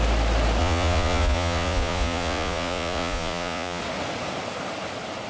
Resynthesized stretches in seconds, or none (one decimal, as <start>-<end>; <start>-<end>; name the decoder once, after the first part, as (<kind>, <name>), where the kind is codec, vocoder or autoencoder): 0.6-3.8 (vocoder, Vocos)